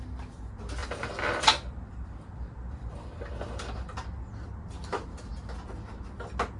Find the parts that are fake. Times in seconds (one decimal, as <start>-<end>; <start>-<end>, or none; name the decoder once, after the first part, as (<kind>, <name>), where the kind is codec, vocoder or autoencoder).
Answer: 0.8-4.3 (vocoder, BigVGAN v2)